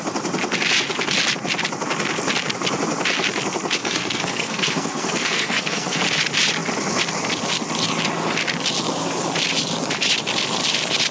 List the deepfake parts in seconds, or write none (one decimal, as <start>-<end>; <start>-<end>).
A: 3.8-6.0